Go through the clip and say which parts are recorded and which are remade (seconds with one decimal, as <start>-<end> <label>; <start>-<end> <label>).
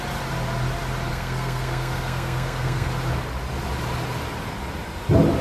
0.0-1.1 recorded; 1.1-2.9 remade; 2.9-5.4 recorded